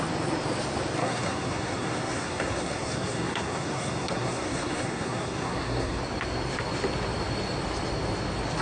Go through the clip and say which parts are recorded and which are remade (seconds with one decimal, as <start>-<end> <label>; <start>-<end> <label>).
0.0-1.0 recorded; 1.0-6.0 remade; 6.0-8.6 recorded